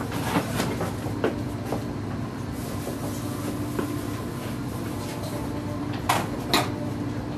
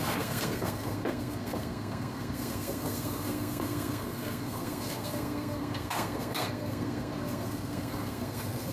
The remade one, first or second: second